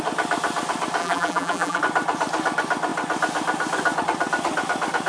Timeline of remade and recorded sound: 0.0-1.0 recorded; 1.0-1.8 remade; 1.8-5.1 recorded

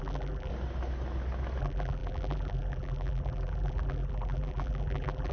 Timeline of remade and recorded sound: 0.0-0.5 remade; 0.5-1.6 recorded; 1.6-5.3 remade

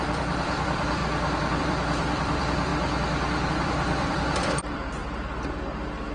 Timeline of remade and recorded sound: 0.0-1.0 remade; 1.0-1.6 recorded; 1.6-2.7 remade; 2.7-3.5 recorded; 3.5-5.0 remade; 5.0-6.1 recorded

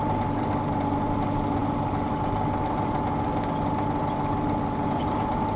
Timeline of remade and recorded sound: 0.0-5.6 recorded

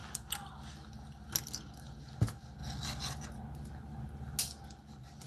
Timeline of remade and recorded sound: 0.0-5.3 recorded